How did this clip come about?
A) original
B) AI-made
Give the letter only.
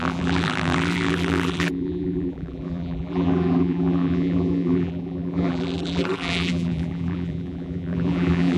B